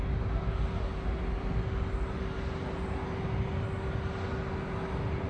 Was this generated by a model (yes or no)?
no